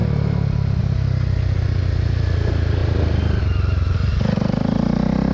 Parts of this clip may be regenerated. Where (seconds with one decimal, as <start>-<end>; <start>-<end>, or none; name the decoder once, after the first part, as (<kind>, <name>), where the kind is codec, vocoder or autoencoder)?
none